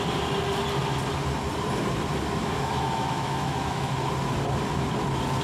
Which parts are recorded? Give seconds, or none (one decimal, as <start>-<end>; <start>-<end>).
0.0-2.4; 3.9-5.4